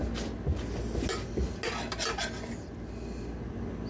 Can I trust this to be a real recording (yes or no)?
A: yes